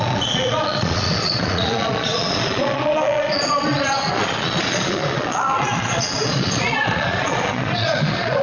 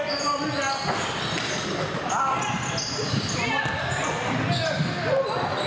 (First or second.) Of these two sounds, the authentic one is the second